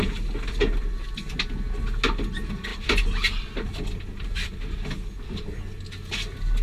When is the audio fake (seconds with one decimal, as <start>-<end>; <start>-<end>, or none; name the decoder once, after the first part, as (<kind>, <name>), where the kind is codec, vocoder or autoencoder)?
2.7-3.7 (vocoder, BigVGAN v2)